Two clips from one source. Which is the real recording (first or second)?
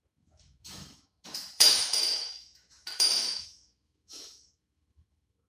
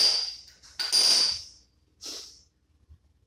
second